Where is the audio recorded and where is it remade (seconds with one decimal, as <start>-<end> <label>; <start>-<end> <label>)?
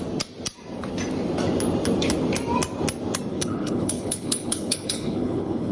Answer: 0.0-3.3 recorded; 3.3-5.7 remade